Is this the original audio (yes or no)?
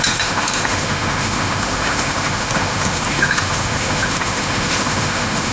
no